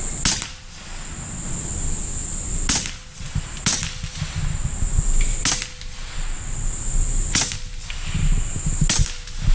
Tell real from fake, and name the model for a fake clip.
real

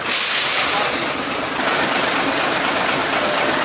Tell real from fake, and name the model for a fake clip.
real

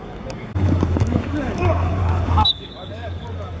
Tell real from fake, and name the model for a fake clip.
fake, codec, DAC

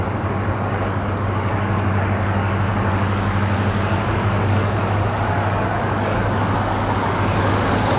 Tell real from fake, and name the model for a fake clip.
fake, codec, DAC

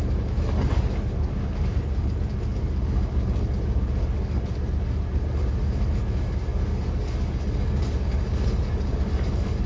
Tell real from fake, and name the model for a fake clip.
fake, codec, DAC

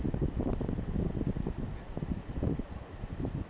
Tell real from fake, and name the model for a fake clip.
real